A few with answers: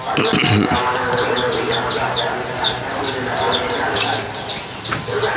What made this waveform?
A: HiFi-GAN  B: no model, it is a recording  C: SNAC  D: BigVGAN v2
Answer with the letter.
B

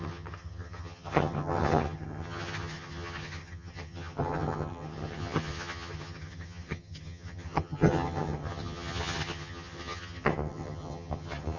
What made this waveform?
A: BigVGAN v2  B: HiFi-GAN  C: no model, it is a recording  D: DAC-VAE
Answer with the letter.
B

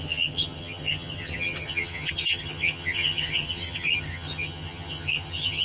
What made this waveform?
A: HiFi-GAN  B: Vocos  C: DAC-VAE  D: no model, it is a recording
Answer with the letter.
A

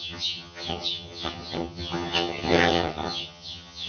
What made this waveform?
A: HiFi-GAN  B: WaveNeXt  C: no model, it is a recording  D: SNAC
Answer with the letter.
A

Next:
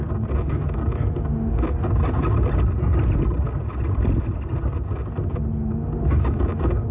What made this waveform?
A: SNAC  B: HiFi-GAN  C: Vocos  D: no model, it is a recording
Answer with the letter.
D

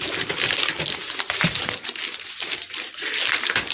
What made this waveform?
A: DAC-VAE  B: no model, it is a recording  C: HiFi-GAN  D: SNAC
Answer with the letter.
B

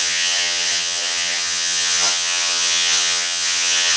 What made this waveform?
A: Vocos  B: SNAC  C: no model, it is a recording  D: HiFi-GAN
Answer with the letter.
D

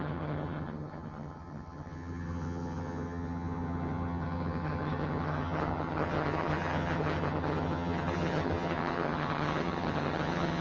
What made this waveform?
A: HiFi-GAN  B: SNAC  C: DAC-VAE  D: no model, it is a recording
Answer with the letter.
A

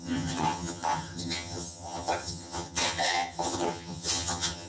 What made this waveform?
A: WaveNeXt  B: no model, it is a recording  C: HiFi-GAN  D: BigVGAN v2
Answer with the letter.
C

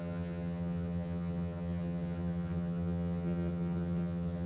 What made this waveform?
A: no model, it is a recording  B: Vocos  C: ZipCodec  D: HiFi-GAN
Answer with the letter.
D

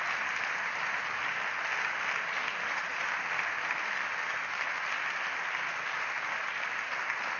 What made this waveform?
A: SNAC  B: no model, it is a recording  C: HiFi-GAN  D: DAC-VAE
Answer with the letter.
B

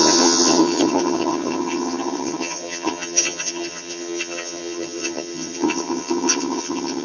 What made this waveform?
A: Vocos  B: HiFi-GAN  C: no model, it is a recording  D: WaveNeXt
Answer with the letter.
B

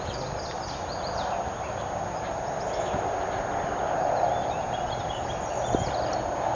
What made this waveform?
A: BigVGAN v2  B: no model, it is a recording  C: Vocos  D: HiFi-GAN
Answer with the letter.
B